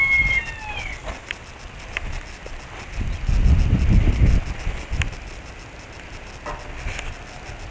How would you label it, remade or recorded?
recorded